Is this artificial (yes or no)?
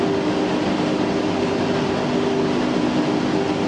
no